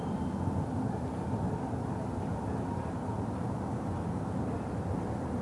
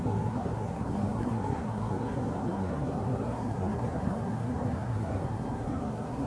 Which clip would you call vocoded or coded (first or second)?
second